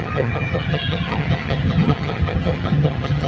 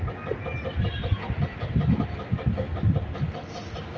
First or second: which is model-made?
first